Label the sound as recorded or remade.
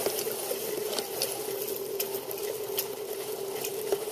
recorded